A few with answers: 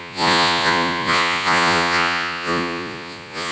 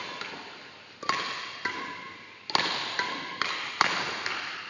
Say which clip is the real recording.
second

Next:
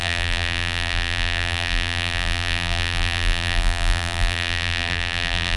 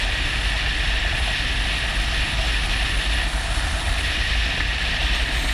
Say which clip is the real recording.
second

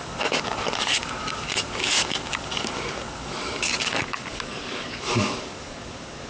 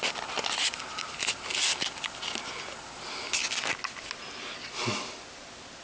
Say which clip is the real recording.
second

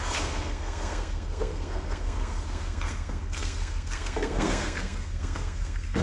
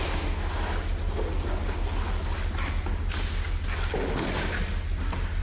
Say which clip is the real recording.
second